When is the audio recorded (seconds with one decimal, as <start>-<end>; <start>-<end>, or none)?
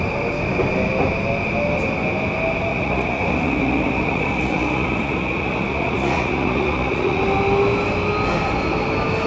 0.0-2.7; 7.2-9.3